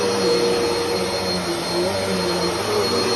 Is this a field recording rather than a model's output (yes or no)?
yes